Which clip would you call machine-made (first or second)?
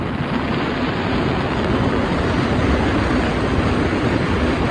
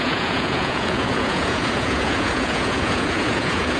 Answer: second